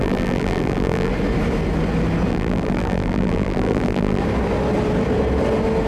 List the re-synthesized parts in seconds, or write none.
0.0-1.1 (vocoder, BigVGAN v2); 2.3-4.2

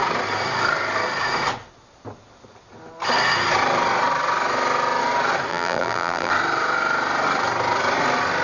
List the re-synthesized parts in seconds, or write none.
5.5-6.3 (vocoder, BigVGAN v2)